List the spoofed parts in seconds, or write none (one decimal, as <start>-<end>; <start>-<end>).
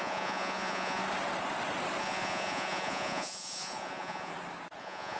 0.0-1.0; 2.0-4.3; 4.8-5.2